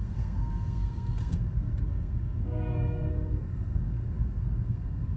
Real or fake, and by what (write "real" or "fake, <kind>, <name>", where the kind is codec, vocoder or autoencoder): fake, codec, SNAC